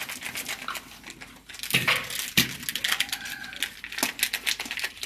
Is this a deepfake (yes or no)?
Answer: no